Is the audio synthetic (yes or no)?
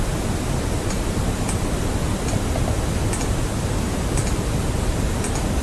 no